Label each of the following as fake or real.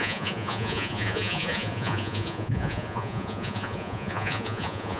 fake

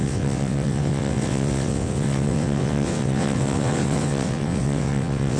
fake